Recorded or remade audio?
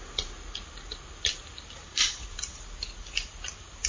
recorded